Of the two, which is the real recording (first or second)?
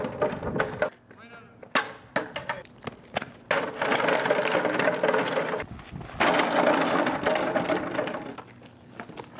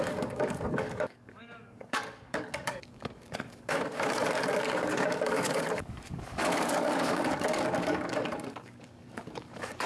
first